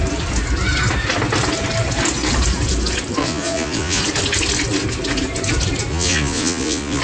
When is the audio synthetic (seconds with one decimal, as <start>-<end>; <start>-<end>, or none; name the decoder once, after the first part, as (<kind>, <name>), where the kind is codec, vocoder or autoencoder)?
3.2-4.0 (vocoder, Vocos); 5.9-7.0